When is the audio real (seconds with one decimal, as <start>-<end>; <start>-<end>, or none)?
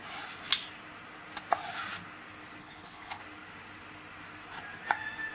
0.0-2.6; 3.2-5.3